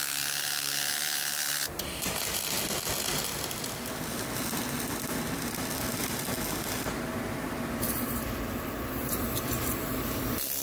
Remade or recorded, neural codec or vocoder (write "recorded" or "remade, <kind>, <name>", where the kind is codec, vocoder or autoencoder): recorded